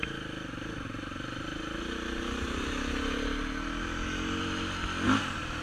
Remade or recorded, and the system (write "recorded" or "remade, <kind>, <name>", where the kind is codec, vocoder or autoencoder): recorded